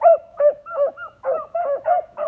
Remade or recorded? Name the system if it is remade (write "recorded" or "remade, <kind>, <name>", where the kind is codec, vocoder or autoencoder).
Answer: remade, autoencoder, DAC-VAE